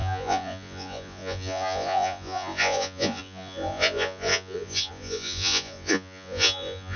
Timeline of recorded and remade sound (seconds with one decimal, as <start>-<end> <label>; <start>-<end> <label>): 0.0-7.0 remade